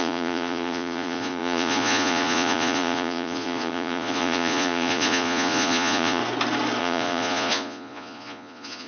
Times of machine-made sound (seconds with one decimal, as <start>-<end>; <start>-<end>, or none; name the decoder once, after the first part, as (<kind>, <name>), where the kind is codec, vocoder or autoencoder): 0.0-6.2 (vocoder, Vocos); 6.8-8.9